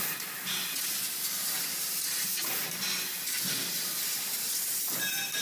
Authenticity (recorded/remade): recorded